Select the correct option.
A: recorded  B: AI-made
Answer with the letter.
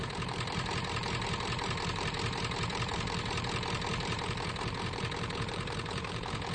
B